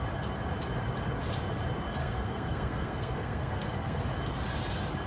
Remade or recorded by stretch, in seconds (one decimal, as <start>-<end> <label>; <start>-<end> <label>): 0.0-2.0 recorded; 2.0-4.0 remade; 4.0-5.1 recorded